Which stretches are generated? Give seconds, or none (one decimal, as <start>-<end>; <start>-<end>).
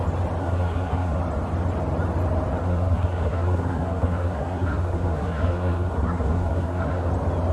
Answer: 0.4-1.2; 2.6-7.1